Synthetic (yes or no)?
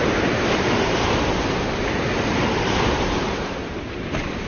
yes